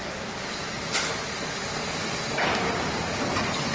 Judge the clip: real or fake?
real